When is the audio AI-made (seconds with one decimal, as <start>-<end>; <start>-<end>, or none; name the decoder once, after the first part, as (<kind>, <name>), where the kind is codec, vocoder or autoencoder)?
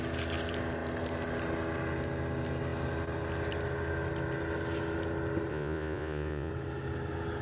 5.5-6.5 (vocoder, Vocos)